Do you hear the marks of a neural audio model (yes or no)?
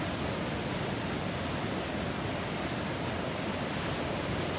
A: no